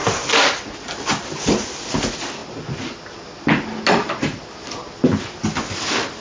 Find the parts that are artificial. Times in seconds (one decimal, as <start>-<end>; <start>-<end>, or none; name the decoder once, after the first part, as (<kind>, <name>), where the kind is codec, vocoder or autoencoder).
none